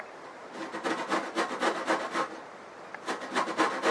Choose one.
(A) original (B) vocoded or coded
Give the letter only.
A